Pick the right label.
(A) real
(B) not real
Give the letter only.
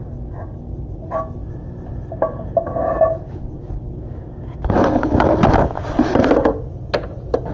A